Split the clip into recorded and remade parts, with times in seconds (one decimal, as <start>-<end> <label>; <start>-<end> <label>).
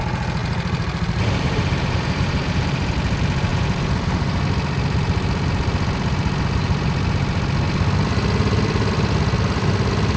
0.0-0.4 recorded; 0.4-2.9 remade; 2.9-3.5 recorded; 3.5-4.4 remade; 4.4-10.2 recorded